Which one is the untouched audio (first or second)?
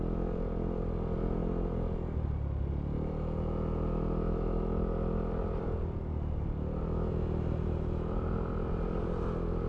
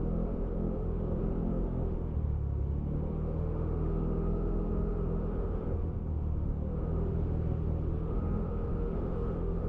first